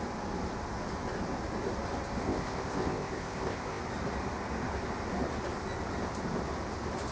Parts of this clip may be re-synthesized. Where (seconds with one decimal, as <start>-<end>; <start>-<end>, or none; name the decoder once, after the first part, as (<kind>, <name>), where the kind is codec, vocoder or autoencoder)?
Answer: 2.2-3.8 (codec, ZipCodec)